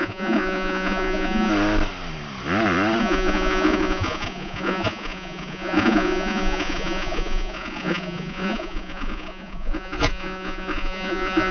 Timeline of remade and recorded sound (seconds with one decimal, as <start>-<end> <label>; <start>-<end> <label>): 0.0-1.5 remade; 1.5-3.0 recorded; 3.0-11.5 remade